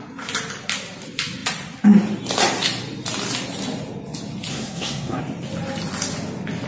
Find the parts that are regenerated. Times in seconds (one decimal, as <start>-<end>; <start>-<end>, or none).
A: 4.5-5.2